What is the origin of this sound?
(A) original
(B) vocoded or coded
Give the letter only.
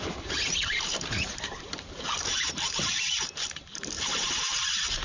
B